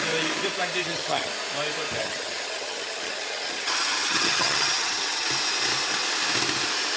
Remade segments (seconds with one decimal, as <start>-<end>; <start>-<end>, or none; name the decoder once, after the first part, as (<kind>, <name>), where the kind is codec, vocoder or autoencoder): 0.8-1.3 (vocoder, HiFi-GAN); 2.0-5.3